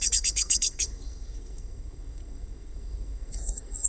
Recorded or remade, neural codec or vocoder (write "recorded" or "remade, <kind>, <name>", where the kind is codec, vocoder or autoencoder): remade, codec, SNAC